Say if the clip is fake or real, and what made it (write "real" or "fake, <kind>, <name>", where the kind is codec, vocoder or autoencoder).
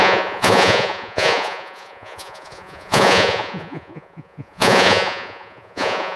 fake, vocoder, Vocos